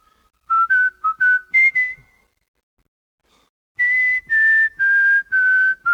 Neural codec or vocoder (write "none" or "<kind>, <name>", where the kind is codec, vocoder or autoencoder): none